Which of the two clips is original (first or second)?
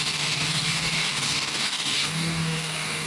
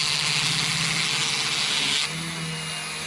second